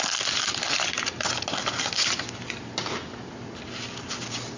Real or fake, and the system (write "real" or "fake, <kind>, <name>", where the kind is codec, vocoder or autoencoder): real